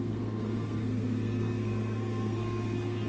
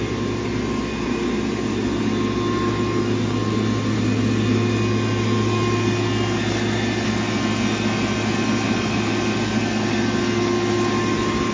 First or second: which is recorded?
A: second